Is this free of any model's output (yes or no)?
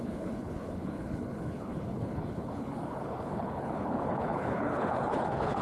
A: no